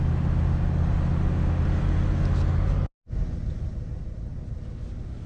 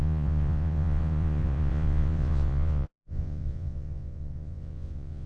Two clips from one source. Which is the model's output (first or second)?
second